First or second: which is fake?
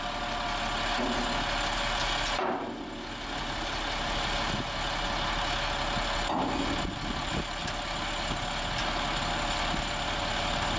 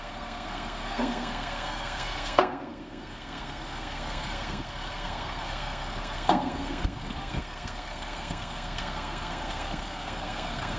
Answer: second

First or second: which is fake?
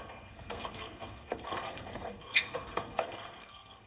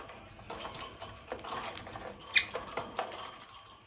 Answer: first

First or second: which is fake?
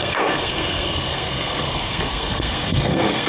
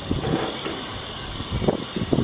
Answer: first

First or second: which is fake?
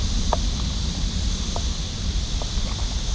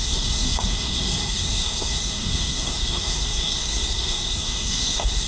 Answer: second